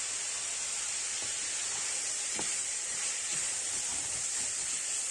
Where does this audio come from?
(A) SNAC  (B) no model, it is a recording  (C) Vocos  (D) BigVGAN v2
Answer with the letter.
B